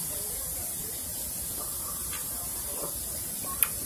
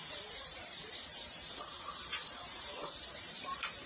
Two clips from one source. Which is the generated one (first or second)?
second